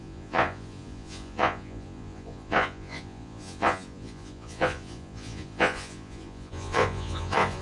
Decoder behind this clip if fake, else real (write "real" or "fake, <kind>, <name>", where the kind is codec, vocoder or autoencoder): fake, vocoder, Vocos